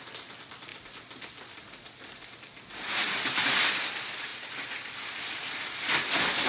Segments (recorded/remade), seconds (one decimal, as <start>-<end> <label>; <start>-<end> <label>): 0.0-6.5 recorded